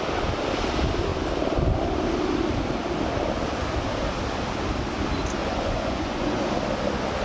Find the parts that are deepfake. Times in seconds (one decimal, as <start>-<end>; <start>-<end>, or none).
5.4-6.4